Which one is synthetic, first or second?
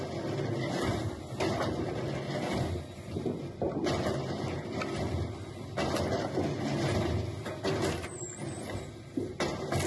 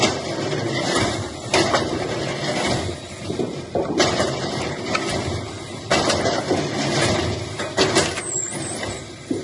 second